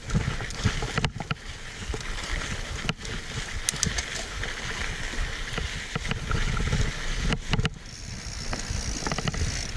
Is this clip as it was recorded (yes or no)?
yes